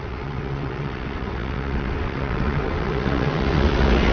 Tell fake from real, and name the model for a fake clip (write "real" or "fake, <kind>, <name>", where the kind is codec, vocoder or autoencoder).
fake, vocoder, WaveNeXt